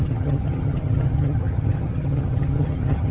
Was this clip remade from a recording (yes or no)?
yes